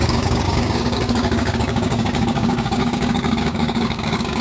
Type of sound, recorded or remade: remade